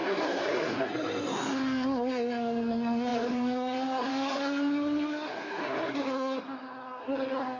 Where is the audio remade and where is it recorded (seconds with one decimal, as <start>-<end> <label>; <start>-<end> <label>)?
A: 0.0-7.6 remade